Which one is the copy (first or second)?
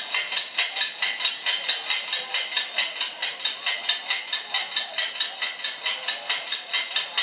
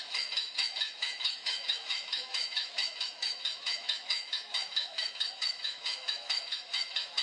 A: second